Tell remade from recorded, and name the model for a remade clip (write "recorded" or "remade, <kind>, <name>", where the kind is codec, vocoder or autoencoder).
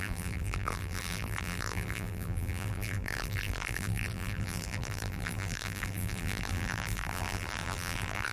remade, vocoder, BigVGAN v2